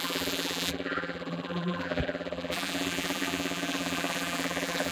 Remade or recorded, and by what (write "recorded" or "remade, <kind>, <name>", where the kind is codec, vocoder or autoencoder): remade, vocoder, BigVGAN v2